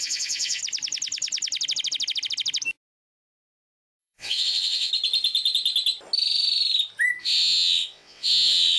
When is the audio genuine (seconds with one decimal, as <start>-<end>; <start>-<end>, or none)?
0.6-4.0; 4.9-7.2